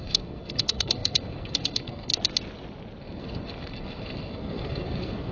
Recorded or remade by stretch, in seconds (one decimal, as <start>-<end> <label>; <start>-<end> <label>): 0.0-2.1 remade; 2.1-3.0 recorded; 3.0-5.3 remade